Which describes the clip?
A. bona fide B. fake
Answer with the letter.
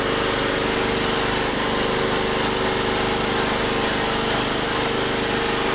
A